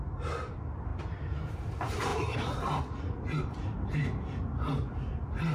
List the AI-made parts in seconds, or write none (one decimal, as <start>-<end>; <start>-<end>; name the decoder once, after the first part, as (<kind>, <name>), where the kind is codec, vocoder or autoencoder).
0.0-5.5 (vocoder, BigVGAN v2)